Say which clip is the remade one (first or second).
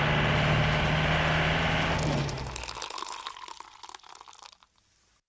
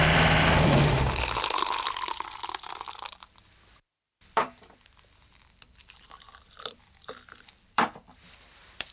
second